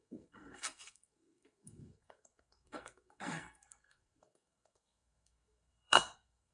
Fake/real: fake